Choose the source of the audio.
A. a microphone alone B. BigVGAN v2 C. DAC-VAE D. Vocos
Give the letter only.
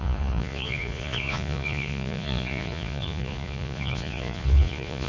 D